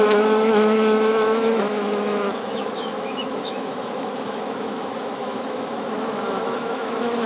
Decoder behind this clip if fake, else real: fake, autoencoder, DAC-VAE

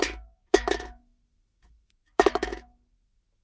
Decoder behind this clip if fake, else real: fake, autoencoder, DAC-VAE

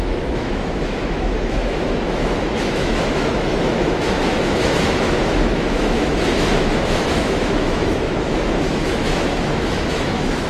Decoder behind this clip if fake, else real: fake, autoencoder, DAC-VAE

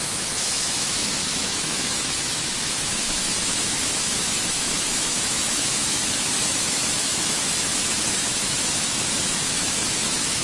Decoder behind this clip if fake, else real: fake, autoencoder, DAC-VAE